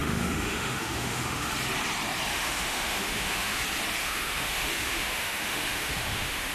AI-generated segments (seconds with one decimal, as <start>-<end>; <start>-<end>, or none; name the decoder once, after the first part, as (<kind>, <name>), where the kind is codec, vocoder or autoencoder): 0.0-1.5 (autoencoder, DAC-VAE); 2.3-3.6; 4.0-6.5